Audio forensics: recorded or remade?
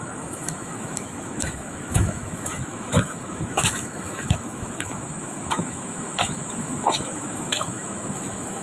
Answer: remade